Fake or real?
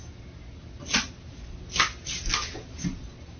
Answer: real